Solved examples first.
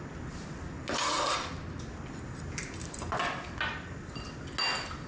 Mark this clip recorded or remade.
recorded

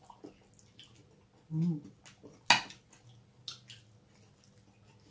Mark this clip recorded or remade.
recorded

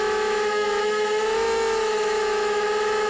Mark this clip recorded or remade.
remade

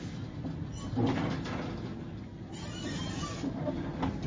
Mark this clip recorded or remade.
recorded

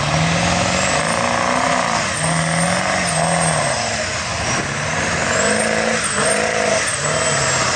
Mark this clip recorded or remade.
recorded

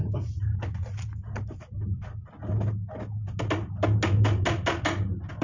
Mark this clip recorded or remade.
recorded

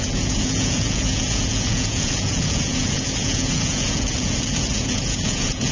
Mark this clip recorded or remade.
remade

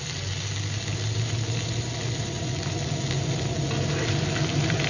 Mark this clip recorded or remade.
recorded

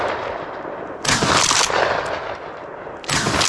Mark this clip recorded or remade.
recorded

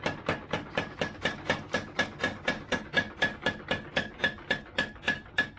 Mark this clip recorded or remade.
recorded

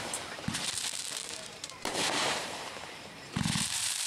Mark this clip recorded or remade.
remade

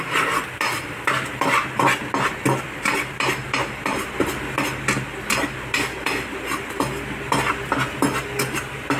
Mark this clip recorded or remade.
recorded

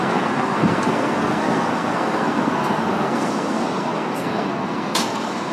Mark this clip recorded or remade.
remade